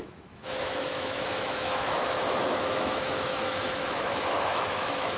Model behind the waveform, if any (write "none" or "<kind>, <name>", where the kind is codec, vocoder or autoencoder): autoencoder, DAC-VAE